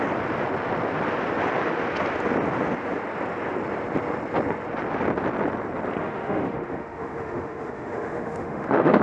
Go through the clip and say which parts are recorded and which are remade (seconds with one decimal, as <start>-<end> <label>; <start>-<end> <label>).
0.0-6.0 recorded; 6.0-9.0 remade